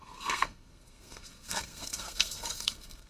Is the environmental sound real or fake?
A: fake